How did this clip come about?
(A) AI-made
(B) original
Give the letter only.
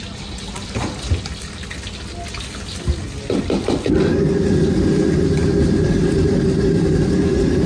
B